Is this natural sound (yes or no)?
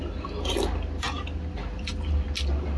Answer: yes